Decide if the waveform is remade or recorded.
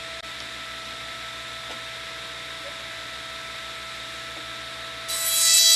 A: recorded